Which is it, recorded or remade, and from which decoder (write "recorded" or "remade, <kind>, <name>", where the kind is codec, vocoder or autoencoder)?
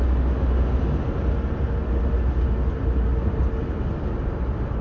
recorded